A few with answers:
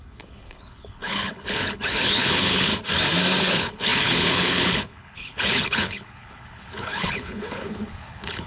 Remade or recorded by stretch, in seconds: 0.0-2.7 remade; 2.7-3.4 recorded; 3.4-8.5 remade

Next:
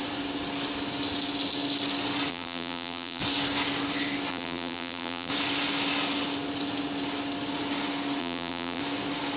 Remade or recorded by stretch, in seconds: 0.0-2.3 recorded; 2.3-3.2 remade; 3.2-4.3 recorded; 4.3-5.3 remade; 5.3-8.2 recorded; 8.2-8.8 remade; 8.8-9.4 recorded

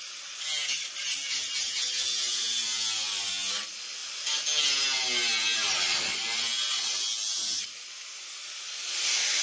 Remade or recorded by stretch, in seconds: 0.0-9.4 recorded

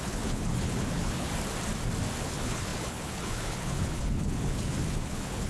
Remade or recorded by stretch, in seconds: 0.0-1.3 remade; 1.3-2.2 recorded; 2.2-5.5 remade

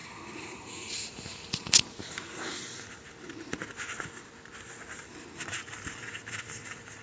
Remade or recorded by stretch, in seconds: 0.0-7.0 recorded

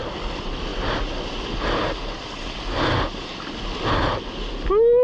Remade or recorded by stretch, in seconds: 0.0-5.0 recorded

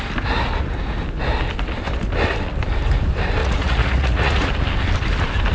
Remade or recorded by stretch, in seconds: 0.0-3.4 recorded; 3.4-4.5 remade; 4.5-5.5 recorded